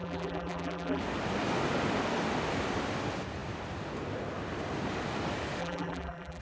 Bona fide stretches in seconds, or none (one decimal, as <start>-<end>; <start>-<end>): 1.0-5.6